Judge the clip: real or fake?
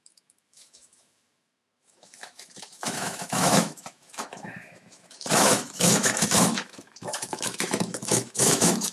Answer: fake